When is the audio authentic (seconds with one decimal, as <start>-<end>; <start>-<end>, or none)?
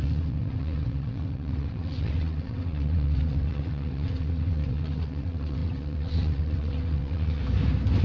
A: 7.4-8.0